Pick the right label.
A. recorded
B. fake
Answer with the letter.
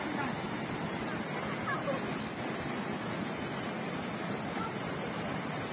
A